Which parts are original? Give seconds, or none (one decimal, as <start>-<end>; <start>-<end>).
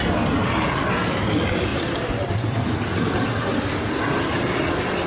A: 0.0-1.7; 2.4-5.1